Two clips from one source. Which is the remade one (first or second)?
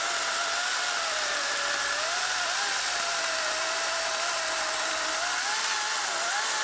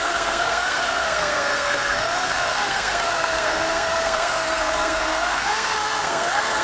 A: second